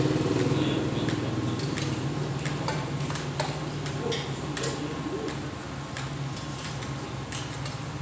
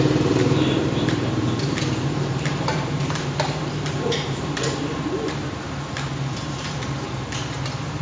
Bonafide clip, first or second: first